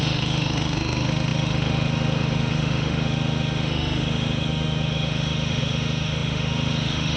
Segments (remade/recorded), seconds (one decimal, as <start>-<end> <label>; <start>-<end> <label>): 0.0-7.2 remade